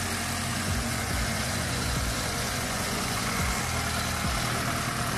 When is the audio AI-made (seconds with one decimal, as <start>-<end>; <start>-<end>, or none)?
0.5-3.6